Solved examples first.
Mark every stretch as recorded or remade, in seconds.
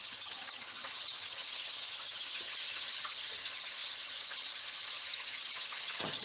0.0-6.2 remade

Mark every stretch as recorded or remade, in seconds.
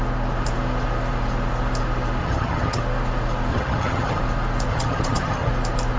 0.0-2.2 recorded; 2.2-2.8 remade; 2.8-3.5 recorded; 3.5-4.2 remade; 4.2-4.7 recorded; 4.7-5.5 remade; 5.5-6.0 recorded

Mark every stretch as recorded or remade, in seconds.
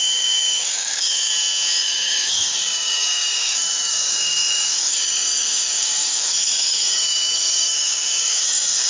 0.0-1.3 remade; 1.3-1.8 recorded; 1.8-8.9 remade